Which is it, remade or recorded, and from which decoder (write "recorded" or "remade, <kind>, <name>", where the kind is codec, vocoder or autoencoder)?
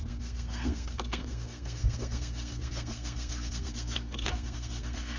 remade, codec, SNAC